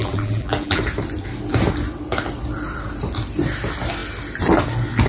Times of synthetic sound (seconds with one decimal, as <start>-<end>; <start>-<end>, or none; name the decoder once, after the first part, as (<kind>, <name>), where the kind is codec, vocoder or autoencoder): 0.0-0.8 (vocoder, BigVGAN v2)